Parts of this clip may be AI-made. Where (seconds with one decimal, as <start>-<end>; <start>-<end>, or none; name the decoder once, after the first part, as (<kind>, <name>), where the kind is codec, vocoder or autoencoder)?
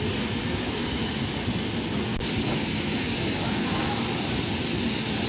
0.4-1.3 (autoencoder, DAC-VAE); 2.1-4.0